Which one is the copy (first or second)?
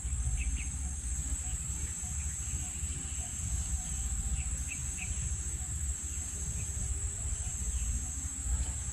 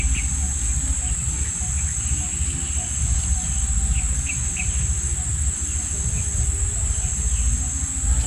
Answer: first